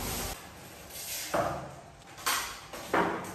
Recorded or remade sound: recorded